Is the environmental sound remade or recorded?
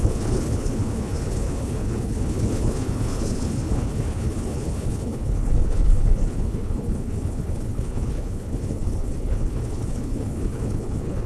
remade